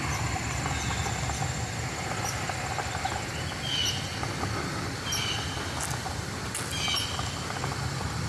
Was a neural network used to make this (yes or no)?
no